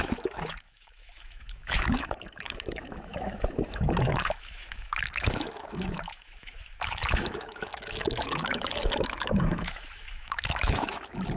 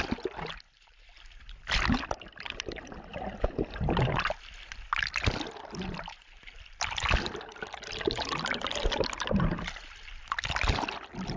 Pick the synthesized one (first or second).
first